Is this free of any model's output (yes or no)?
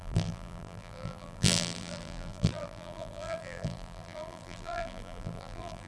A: no